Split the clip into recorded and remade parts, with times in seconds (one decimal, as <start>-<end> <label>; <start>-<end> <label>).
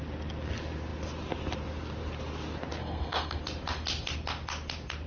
0.0-2.8 recorded; 2.8-3.4 remade; 3.4-5.1 recorded